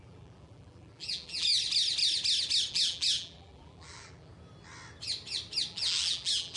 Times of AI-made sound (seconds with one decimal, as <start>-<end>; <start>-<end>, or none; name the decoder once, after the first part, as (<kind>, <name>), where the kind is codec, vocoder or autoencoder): 0.0-1.5 (vocoder, BigVGAN v2); 2.7-4.3; 5.7-6.6